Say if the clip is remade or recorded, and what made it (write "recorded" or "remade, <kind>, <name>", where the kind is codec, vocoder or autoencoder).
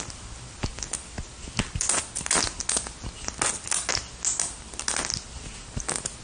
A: recorded